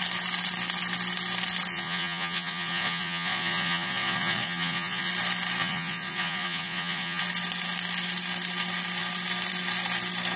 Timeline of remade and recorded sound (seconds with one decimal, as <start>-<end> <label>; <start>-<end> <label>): 0.0-1.7 recorded; 1.7-5.1 remade; 5.1-5.6 recorded; 5.6-7.2 remade; 7.2-10.4 recorded

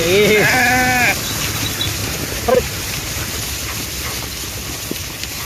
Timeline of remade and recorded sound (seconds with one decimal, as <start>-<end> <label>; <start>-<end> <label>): 0.0-2.0 recorded; 2.0-3.4 remade; 3.4-5.4 recorded

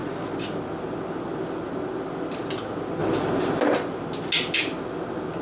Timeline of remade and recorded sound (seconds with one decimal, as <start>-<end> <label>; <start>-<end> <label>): 0.0-5.4 recorded

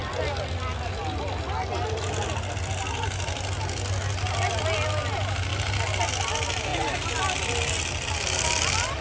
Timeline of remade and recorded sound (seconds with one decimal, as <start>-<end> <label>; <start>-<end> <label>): 0.0-9.0 recorded

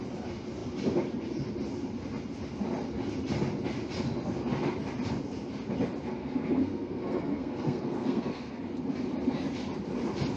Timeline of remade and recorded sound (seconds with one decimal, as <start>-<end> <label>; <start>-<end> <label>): 0.0-6.2 recorded; 6.2-8.6 remade; 8.6-10.4 recorded

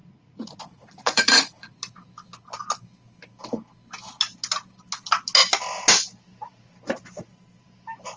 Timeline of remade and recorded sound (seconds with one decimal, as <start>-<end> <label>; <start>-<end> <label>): 0.0-1.8 remade; 1.8-8.2 recorded

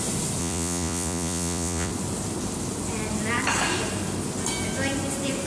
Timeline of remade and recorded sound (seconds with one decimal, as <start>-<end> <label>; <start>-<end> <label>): 0.0-0.4 recorded; 0.4-1.9 remade; 1.9-5.5 recorded